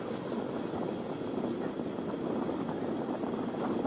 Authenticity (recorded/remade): recorded